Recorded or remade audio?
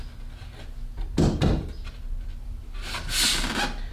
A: recorded